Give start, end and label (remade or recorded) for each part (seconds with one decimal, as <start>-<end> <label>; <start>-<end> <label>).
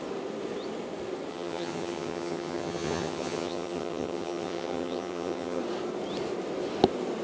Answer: 0.0-1.3 recorded; 1.3-5.6 remade; 5.6-7.2 recorded